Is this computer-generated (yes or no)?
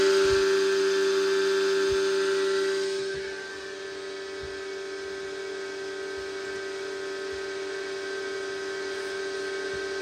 no